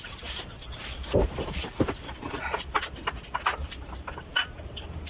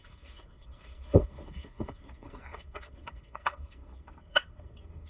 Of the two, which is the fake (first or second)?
second